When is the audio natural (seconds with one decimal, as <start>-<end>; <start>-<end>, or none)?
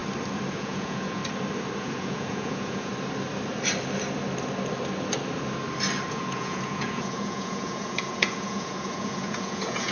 0.0-0.5; 1.2-1.8; 2.9-6.1